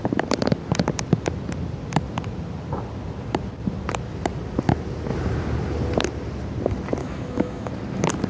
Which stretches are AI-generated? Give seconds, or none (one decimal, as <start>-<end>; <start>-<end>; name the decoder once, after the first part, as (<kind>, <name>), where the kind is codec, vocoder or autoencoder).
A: 7.0-7.7 (autoencoder, DAC-VAE)